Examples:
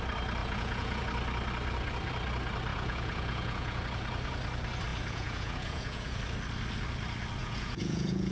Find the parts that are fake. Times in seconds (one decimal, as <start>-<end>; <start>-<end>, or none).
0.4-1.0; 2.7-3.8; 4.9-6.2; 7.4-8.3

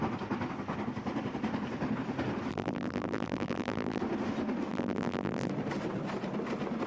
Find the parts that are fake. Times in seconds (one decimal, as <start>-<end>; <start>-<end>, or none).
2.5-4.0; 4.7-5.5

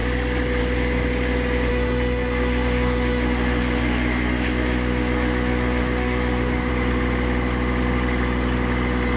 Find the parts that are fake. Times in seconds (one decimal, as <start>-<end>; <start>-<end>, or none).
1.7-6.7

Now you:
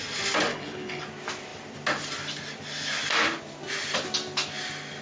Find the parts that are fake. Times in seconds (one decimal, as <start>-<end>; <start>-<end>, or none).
0.5-1.0

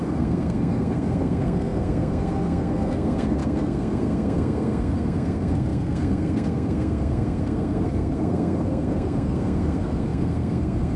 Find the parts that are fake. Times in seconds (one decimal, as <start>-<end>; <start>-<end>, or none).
0.0-11.0